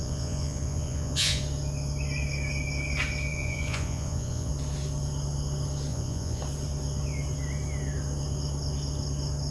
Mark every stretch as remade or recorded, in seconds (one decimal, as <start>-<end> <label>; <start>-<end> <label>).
0.0-1.4 remade; 1.4-3.3 recorded; 3.3-4.5 remade; 4.5-5.9 recorded; 5.9-6.4 remade; 6.4-9.5 recorded